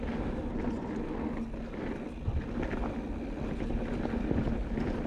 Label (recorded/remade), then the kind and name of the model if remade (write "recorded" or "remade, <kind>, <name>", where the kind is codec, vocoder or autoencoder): recorded